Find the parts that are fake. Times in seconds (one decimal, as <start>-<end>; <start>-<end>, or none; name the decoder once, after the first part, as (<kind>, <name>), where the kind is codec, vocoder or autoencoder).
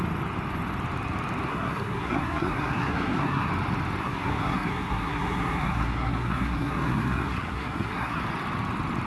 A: 1.5-3.5 (codec, SNAC); 4.0-8.2